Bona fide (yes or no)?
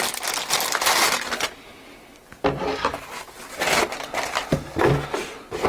yes